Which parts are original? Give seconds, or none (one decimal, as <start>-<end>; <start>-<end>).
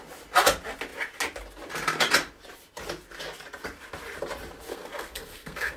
0.0-4.7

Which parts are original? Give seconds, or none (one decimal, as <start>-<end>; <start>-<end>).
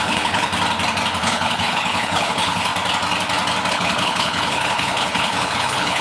0.5-1.2; 2.7-3.7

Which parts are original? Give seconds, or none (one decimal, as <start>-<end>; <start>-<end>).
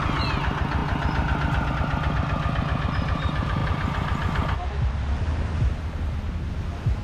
0.0-7.0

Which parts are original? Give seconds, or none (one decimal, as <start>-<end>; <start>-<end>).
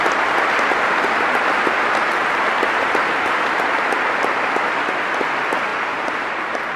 0.0-5.7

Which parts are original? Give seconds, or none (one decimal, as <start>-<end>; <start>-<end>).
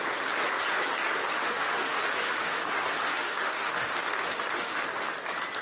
0.0-1.4; 4.8-5.6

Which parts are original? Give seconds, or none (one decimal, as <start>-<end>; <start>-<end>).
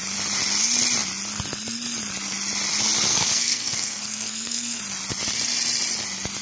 0.0-3.1; 4.8-6.4